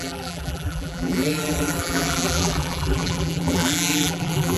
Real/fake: fake